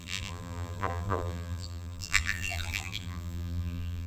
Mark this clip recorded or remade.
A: remade